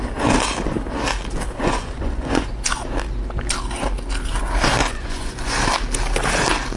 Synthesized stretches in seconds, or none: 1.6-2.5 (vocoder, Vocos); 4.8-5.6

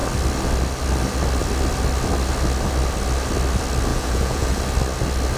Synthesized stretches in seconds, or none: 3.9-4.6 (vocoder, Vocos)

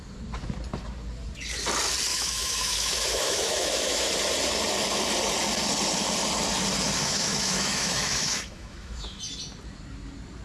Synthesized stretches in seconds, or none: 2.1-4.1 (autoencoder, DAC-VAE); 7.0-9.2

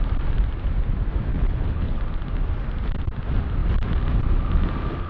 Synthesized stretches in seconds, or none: 1.3-2.0 (codec, HILCodec)

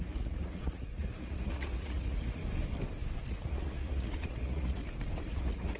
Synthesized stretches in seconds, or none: 0.0-2.4 (vocoder, Vocos); 3.3-4.8; 5.3-5.8